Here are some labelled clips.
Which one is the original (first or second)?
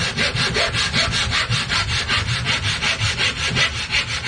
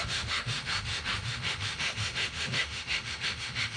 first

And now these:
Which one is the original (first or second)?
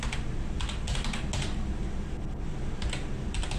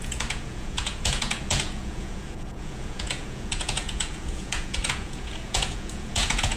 first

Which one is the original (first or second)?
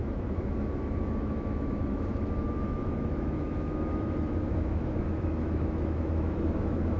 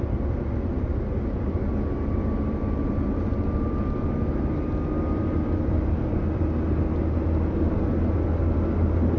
second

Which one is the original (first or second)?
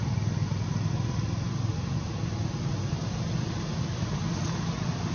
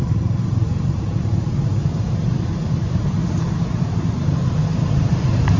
first